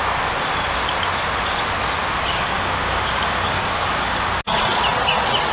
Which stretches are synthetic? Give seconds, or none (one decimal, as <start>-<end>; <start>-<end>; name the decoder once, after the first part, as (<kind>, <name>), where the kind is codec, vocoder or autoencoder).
2.3-4.2 (codec, DAC)